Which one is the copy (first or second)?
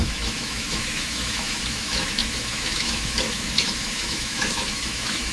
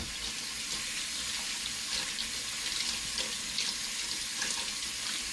first